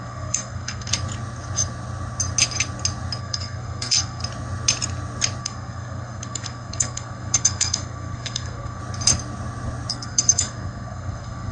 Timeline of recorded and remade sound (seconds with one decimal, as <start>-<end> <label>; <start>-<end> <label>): 0.0-0.9 remade; 0.9-3.2 recorded; 3.2-4.2 remade; 4.2-5.4 recorded; 5.4-8.8 remade; 8.8-9.9 recorded; 9.9-11.5 remade